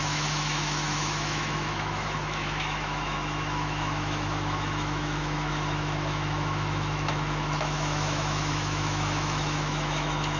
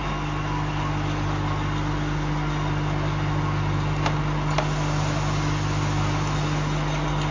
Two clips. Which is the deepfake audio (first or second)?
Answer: first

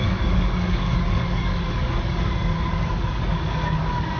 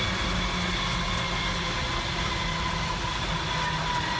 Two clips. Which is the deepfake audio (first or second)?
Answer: first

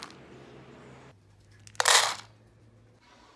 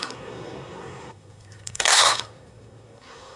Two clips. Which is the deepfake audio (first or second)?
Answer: second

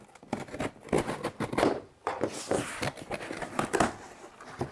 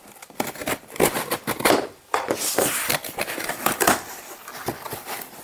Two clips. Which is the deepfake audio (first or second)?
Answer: second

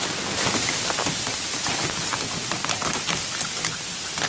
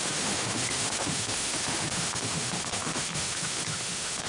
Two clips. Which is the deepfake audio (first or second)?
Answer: second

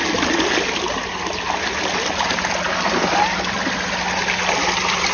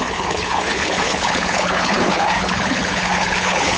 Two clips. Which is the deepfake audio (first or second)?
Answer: second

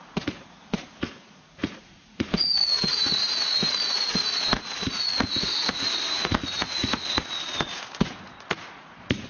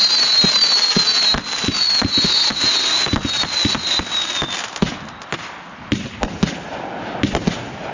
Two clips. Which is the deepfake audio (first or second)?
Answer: first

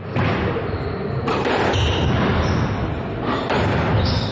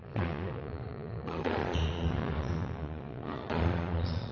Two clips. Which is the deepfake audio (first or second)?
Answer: second